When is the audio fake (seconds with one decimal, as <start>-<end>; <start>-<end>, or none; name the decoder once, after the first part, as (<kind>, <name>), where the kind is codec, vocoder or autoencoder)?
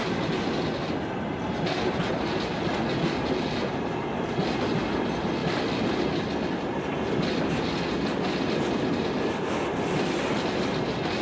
none